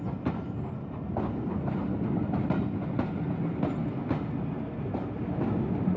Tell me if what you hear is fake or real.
real